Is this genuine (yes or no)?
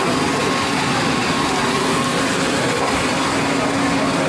yes